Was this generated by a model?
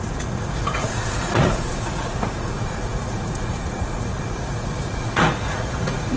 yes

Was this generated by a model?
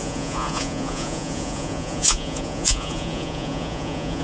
yes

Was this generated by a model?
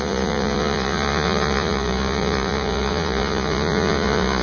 yes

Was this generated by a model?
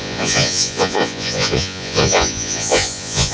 yes